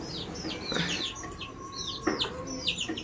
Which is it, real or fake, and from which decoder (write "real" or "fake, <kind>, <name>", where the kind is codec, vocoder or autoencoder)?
real